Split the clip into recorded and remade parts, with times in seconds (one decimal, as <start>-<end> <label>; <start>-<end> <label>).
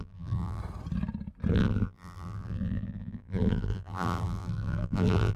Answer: 0.0-0.6 remade; 0.6-1.5 recorded; 1.5-5.4 remade